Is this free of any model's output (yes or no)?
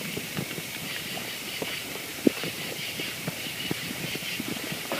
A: no